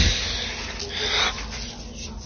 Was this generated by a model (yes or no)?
no